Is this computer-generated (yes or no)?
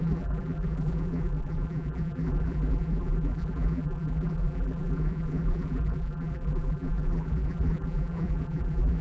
yes